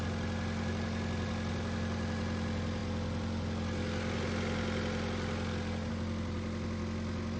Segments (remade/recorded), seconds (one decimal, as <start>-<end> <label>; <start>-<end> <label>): 0.0-7.4 recorded